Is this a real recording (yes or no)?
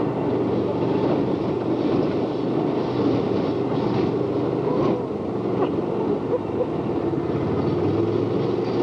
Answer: yes